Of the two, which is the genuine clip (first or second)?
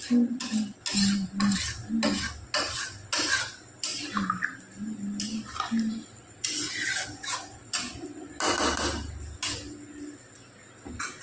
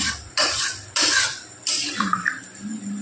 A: first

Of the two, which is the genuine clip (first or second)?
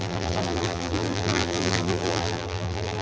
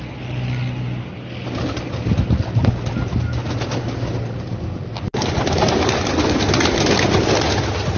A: second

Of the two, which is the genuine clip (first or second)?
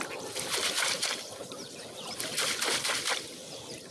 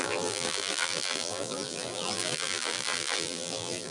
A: first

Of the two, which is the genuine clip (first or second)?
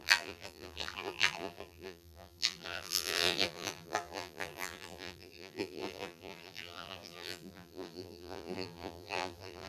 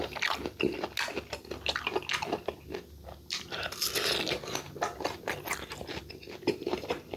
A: second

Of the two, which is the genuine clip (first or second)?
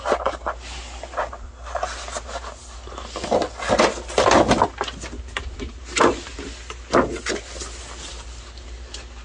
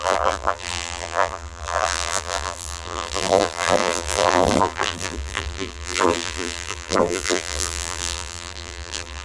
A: first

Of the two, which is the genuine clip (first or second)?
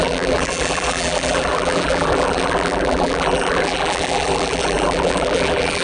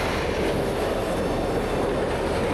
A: second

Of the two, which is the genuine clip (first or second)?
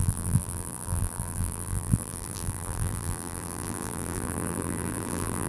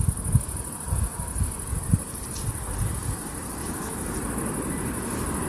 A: second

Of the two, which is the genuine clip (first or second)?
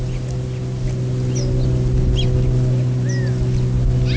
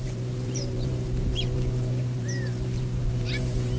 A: first